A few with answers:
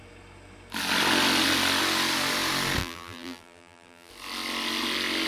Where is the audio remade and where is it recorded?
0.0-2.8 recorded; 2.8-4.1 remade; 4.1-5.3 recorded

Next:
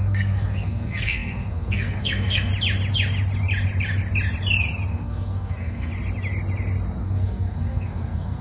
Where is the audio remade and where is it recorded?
0.0-2.5 remade; 2.5-4.9 recorded; 4.9-5.9 remade; 5.9-7.0 recorded; 7.0-8.4 remade